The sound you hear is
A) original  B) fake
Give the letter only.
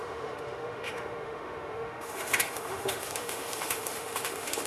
B